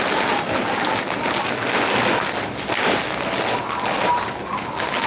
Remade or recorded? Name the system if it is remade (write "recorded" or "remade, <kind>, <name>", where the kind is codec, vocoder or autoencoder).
recorded